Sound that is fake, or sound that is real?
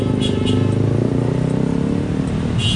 real